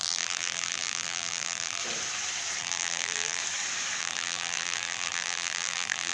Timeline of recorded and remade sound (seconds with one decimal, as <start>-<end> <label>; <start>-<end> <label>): 0.0-1.8 remade; 1.8-2.6 recorded; 2.6-3.4 remade; 3.4-4.0 recorded; 4.0-6.1 remade